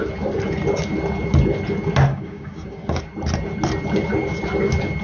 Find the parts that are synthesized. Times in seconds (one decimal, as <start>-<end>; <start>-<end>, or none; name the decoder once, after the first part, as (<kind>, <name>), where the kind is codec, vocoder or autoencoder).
2.1-3.0 (codec, DAC)